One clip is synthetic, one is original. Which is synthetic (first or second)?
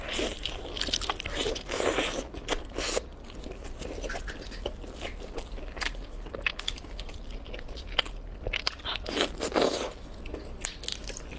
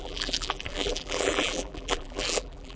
second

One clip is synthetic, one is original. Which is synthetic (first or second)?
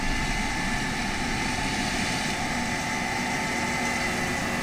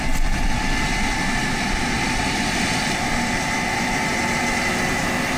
second